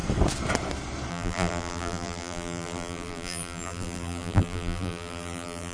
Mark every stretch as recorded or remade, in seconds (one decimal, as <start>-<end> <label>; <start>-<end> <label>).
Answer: 0.0-1.1 recorded; 1.1-5.7 remade